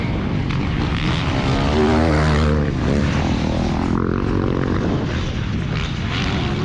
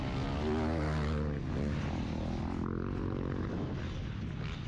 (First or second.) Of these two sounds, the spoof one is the first